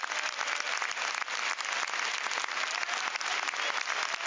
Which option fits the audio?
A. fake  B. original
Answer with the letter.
B